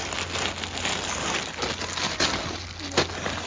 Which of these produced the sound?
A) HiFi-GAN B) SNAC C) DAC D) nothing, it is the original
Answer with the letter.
D